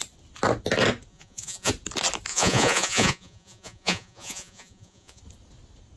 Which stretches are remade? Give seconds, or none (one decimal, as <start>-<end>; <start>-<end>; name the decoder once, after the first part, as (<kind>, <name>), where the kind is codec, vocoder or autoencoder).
1.1-1.7 (vocoder, Vocos); 2.3-5.2